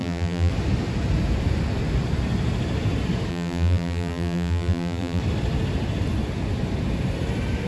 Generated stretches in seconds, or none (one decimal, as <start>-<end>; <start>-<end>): 0.0-0.5; 3.3-5.2

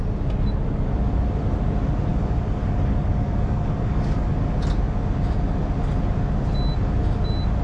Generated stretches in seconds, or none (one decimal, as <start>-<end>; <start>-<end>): 2.1-4.6

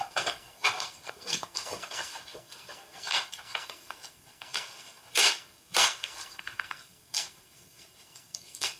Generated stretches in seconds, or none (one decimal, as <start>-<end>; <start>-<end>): 0.0-8.8